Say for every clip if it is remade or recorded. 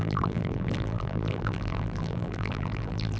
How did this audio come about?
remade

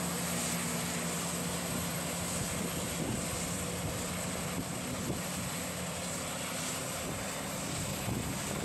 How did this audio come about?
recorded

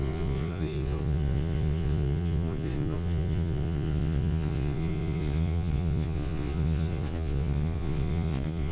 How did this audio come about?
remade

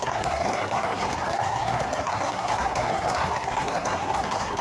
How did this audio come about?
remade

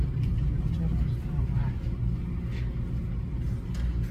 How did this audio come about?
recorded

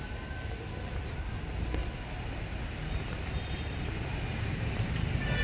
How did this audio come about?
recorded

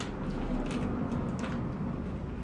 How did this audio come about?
recorded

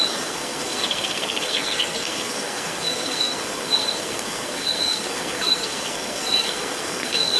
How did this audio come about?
remade